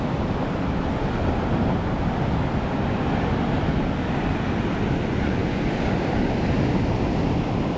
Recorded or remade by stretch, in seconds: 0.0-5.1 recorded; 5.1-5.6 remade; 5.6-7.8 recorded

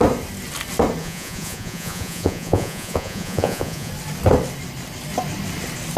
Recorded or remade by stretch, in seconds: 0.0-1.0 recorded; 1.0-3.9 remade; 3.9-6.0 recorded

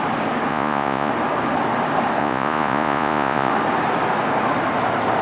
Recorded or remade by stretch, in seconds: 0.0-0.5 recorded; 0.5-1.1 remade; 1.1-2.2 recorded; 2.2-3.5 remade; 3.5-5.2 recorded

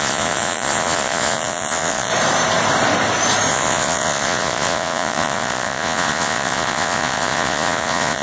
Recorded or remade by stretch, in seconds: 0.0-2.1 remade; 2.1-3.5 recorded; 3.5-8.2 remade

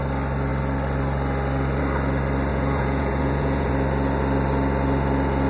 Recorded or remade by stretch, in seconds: 0.0-2.5 recorded; 2.5-3.7 remade; 3.7-5.5 recorded